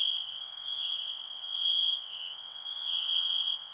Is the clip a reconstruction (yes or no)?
yes